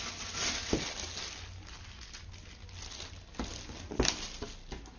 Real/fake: real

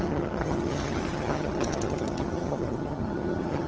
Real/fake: fake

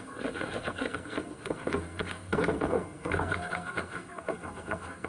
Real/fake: fake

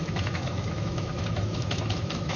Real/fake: fake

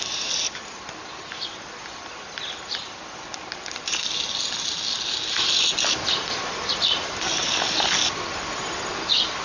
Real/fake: real